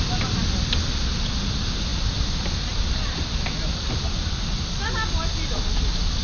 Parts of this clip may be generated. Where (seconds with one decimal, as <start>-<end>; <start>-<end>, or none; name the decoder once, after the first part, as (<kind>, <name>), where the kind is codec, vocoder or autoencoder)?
none